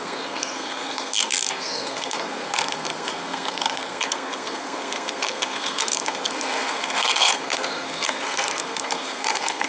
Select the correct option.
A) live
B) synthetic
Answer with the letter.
B